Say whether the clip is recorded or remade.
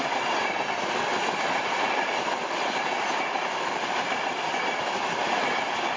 recorded